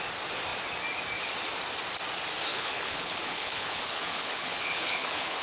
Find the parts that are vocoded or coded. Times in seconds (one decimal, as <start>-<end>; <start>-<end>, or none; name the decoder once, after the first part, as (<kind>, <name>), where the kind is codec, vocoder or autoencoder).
2.5-5.4 (codec, HILCodec)